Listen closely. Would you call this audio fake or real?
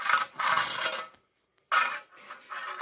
real